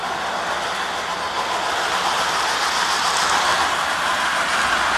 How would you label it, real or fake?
real